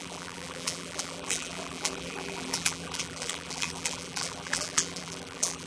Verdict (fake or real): fake